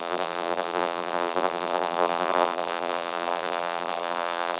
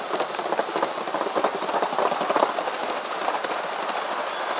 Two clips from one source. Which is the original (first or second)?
second